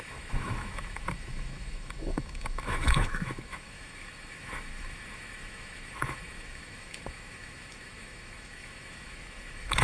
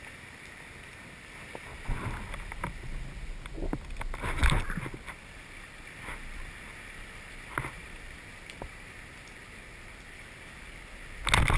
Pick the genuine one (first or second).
second